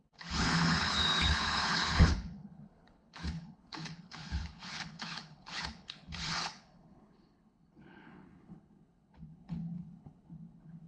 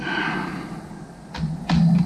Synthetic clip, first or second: first